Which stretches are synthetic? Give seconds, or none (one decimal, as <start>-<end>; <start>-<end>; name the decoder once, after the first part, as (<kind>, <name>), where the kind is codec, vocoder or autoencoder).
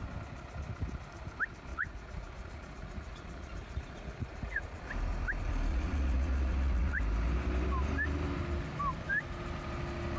1.7-4.9 (vocoder, Vocos); 5.7-7.0